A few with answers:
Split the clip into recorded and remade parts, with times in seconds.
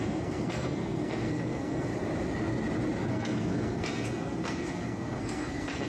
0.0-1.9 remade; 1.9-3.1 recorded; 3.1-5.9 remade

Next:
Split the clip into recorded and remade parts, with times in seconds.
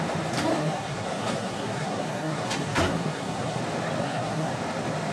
0.0-0.5 recorded; 0.5-3.6 remade; 3.6-4.0 recorded; 4.0-4.5 remade; 4.5-5.1 recorded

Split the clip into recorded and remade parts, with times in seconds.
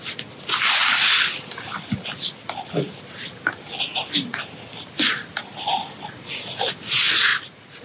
0.0-7.8 recorded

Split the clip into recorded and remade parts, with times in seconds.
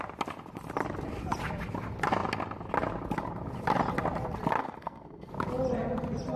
0.0-4.6 recorded; 4.6-5.3 remade; 5.3-6.4 recorded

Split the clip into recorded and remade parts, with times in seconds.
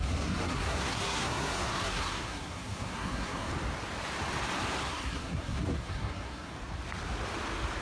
0.0-3.5 remade; 3.5-4.8 recorded; 4.8-6.5 remade; 6.5-7.8 recorded